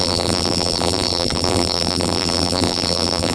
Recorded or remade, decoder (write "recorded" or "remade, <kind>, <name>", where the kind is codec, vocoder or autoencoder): remade, vocoder, BigVGAN v2